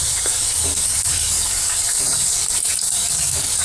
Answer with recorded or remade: remade